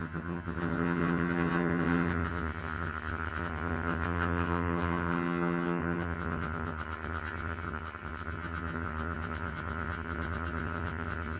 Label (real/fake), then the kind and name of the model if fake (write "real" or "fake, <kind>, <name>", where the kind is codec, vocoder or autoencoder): fake, vocoder, HiFi-GAN